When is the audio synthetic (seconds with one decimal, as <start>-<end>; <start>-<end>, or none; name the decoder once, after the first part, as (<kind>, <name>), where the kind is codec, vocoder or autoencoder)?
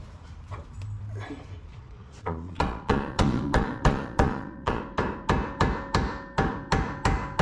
1.7-4.8 (vocoder, Vocos)